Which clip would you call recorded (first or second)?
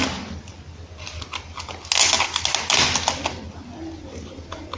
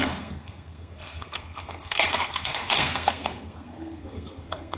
first